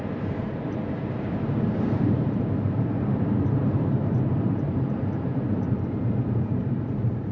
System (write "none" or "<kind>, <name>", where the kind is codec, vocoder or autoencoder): vocoder, BigVGAN v2